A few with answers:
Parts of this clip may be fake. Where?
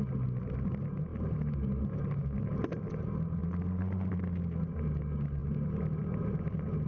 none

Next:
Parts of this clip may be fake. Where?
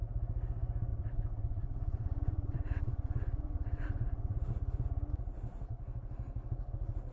0.9-4.5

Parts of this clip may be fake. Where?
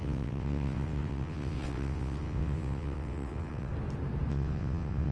0.0-3.7; 4.3-5.1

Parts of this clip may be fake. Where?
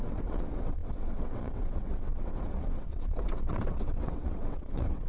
0.0-5.1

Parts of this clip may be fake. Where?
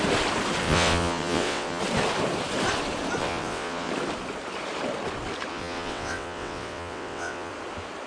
0.6-1.8; 3.2-3.9; 5.5-7.5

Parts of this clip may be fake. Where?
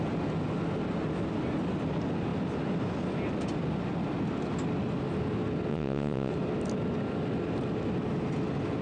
5.7-6.3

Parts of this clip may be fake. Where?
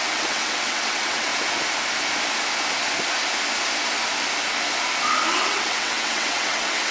0.0-1.3; 5.3-6.9